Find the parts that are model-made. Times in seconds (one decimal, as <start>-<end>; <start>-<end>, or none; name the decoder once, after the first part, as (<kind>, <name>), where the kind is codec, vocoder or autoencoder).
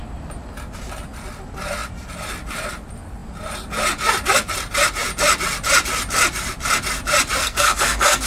7.4-8.3 (codec, SNAC)